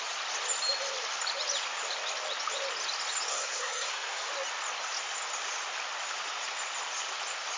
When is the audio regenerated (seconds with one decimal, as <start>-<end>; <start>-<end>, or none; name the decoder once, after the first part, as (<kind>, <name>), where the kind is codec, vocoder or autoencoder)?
3.3-4.3 (codec, SNAC)